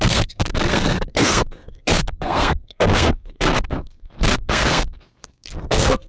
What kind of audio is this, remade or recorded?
remade